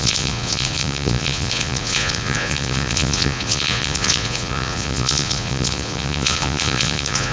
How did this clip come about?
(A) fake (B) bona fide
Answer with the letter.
A